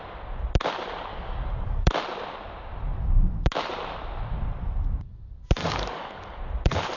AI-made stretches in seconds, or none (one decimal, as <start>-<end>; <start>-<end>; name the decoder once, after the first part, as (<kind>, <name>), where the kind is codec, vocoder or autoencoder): 1.1-1.9 (codec, DAC); 5.6-6.4